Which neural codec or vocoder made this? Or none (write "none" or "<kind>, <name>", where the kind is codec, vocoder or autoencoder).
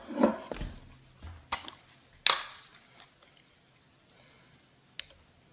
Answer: none